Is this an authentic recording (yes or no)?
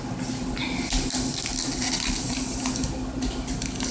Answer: yes